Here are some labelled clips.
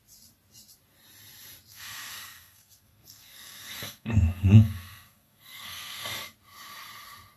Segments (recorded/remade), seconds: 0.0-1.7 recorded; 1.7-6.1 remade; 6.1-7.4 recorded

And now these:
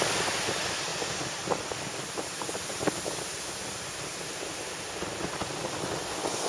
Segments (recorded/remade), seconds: 0.0-6.5 recorded

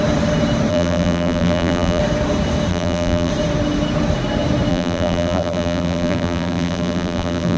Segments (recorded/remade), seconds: 0.0-0.7 recorded; 0.7-2.0 remade; 2.0-2.7 recorded; 2.7-3.3 remade; 3.3-4.7 recorded; 4.7-7.6 remade

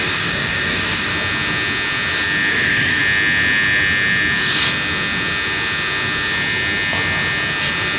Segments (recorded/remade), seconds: 0.0-1.1 remade; 1.1-2.5 recorded; 2.5-3.0 remade; 3.0-8.0 recorded

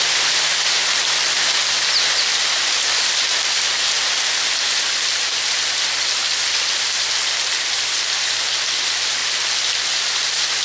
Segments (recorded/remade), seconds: 0.0-10.6 recorded

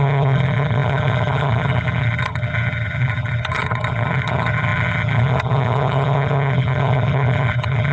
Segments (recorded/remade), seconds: 0.0-7.9 remade

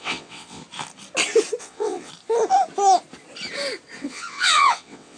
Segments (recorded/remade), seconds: 0.0-0.6 remade; 0.6-1.6 recorded; 1.6-2.1 remade; 2.1-4.0 recorded; 4.0-5.2 remade

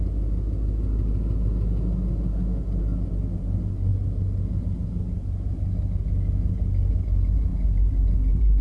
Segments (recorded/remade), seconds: 0.0-8.6 recorded